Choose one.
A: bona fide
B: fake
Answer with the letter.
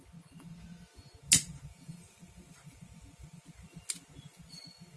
A